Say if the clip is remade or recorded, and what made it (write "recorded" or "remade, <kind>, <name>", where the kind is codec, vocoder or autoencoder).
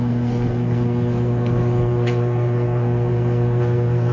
remade, codec, SNAC